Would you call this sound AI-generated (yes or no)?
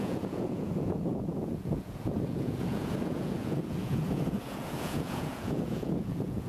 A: yes